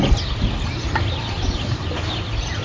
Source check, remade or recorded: recorded